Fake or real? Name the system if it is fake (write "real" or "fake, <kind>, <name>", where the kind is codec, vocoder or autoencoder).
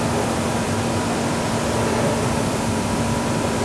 fake, vocoder, BigVGAN v2